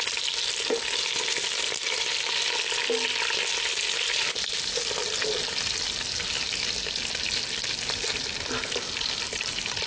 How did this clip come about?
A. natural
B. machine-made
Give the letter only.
A